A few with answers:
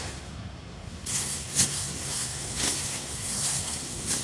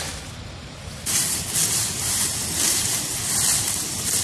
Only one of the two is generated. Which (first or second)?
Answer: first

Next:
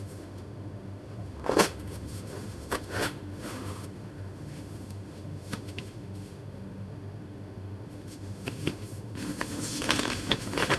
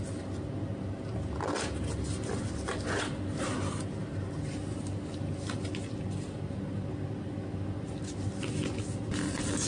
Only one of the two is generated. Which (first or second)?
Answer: first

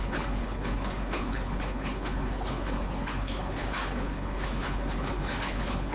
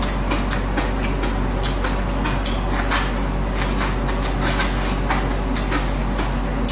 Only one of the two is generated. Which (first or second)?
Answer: first